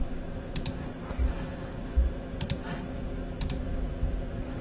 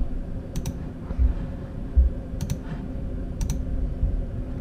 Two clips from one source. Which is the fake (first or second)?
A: second